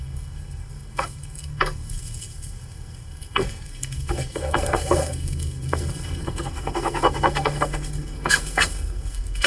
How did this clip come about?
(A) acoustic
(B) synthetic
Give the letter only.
B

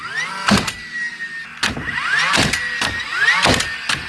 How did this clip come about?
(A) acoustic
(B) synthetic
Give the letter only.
A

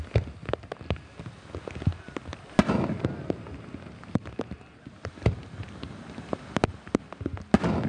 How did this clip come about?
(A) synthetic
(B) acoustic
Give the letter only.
B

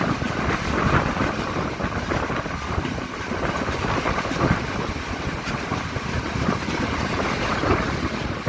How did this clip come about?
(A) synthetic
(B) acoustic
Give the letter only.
B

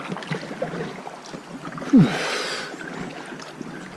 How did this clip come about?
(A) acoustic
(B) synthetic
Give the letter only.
A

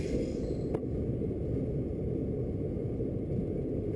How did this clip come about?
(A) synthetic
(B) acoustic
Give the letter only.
B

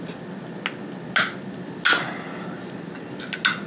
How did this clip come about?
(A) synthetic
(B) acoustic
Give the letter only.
B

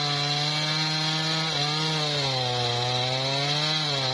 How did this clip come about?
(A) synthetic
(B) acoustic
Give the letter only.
B